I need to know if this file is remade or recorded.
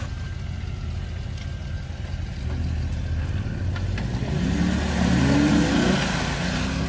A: recorded